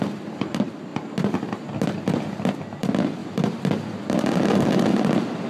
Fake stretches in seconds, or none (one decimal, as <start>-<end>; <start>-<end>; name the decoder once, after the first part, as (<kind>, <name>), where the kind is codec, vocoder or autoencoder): 0.0-0.9 (vocoder, BigVGAN v2); 2.8-5.5